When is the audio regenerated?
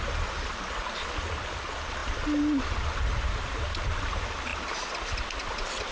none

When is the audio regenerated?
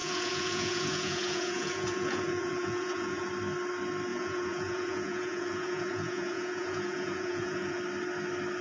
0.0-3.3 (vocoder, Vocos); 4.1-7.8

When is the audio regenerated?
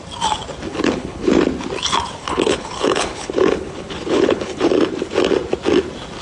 0.7-1.3 (codec, HILCodec); 2.2-4.7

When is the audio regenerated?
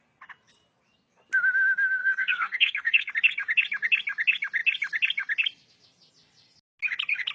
2.0-3.1 (codec, SNAC)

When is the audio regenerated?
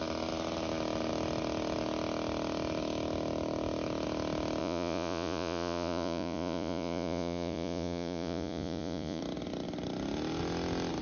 4.6-9.2 (vocoder, Vocos)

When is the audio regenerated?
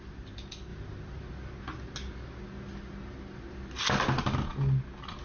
none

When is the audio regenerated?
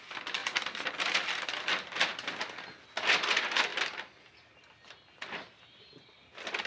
none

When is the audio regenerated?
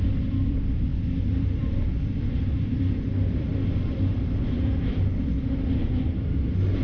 0.0-0.9 (vocoder, BigVGAN v2); 2.0-6.8